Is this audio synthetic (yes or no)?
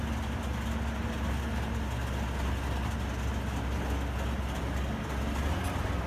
no